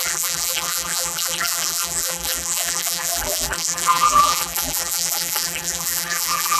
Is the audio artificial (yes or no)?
yes